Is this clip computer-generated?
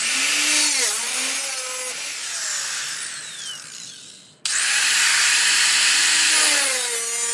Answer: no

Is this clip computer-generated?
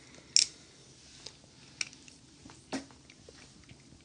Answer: no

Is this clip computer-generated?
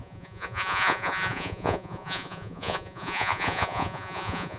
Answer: yes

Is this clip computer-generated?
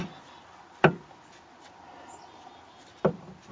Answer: no